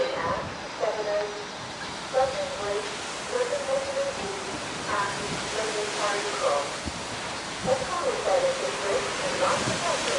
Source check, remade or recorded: recorded